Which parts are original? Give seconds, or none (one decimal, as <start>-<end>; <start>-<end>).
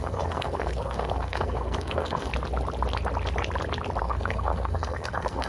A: 2.3-4.0